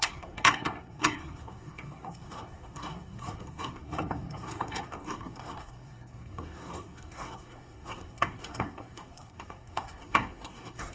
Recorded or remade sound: remade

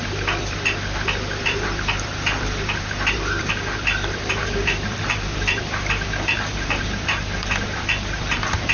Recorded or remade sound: remade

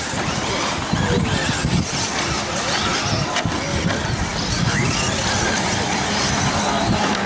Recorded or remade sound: recorded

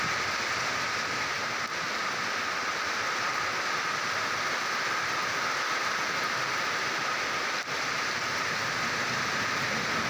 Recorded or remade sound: recorded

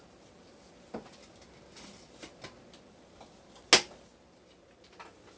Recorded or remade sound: recorded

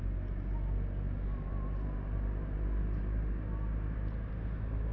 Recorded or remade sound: recorded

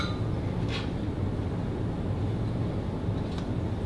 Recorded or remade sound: recorded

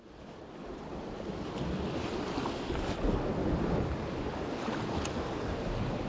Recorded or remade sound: recorded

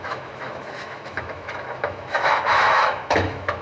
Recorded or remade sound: remade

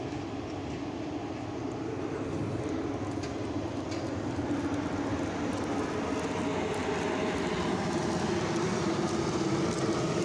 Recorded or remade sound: recorded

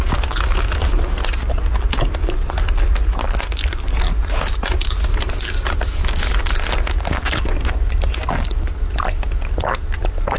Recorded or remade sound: recorded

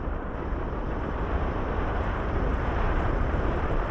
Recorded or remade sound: remade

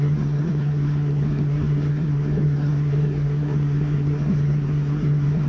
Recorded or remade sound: remade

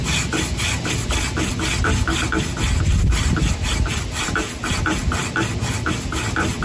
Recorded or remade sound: recorded